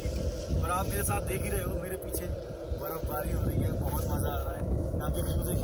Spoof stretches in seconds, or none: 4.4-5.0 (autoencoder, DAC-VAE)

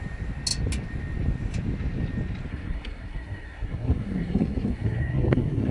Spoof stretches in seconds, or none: 2.5-5.7 (codec, SNAC)

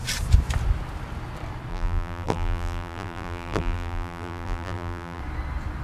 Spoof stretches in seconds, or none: 1.7-5.2 (vocoder, BigVGAN v2)